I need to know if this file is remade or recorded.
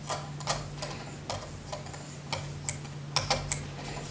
recorded